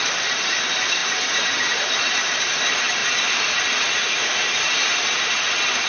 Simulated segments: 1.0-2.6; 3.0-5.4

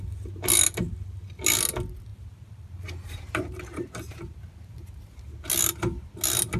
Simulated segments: 2.1-5.3

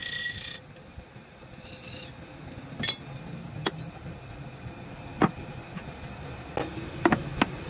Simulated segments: none